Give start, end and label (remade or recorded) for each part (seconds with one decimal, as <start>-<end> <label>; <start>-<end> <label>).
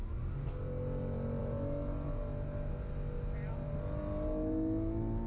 0.0-5.3 recorded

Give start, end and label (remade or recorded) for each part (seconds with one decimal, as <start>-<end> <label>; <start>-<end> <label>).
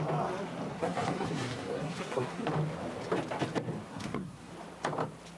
0.0-0.7 recorded; 0.7-2.5 remade; 2.5-3.9 recorded; 3.9-4.5 remade; 4.5-5.4 recorded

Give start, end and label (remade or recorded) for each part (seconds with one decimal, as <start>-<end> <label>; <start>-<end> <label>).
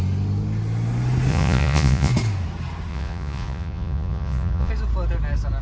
0.0-1.3 recorded; 1.3-2.1 remade; 2.1-2.9 recorded; 2.9-4.7 remade; 4.7-5.6 recorded